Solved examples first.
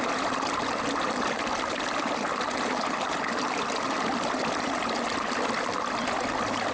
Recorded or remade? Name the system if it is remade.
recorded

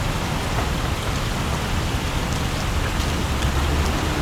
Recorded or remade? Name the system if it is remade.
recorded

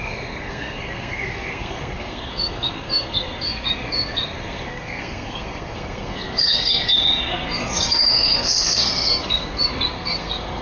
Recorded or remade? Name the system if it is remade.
remade, codec, SNAC